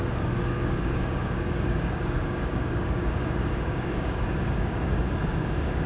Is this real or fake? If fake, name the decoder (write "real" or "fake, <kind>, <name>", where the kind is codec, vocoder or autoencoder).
fake, codec, DAC